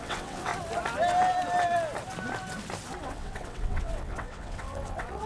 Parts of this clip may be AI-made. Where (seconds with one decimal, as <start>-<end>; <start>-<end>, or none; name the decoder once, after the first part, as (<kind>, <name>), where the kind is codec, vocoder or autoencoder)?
0.0-0.5 (vocoder, WaveNeXt); 3.0-5.3

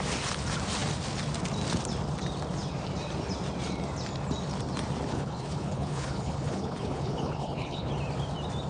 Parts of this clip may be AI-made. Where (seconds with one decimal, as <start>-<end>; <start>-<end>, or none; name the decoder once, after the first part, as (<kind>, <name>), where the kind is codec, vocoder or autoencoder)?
5.1-7.9 (codec, HILCodec)

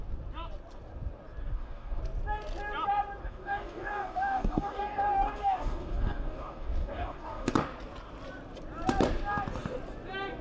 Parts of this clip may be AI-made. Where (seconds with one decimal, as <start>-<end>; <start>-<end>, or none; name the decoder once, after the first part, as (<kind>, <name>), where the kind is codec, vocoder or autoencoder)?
1.4-2.0 (codec, DAC); 3.2-7.5

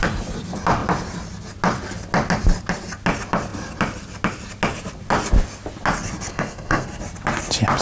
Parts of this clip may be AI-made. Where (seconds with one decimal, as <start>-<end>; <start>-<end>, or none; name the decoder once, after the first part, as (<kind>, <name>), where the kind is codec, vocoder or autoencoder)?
6.3-7.0 (codec, SNAC)

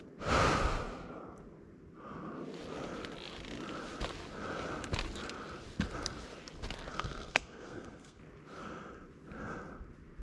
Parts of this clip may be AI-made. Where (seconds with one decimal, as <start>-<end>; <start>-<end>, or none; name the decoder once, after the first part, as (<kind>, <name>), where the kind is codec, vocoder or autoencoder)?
6.9-8.2 (codec, SNAC)

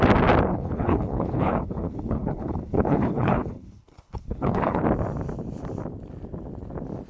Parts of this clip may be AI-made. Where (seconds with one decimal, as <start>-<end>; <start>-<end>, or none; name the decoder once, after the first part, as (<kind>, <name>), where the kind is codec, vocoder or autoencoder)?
0.5-4.8 (codec, HILCodec)